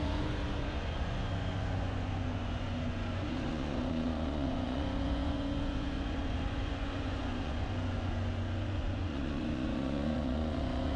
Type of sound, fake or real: fake